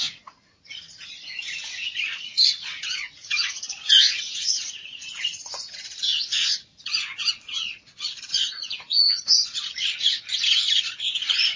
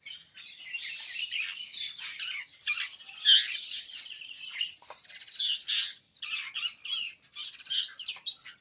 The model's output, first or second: first